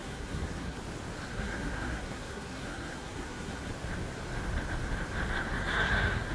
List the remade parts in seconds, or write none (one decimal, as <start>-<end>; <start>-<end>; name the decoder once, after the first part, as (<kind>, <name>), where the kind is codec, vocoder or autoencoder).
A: 0.0-0.8 (codec, SNAC); 1.3-3.7; 5.4-6.3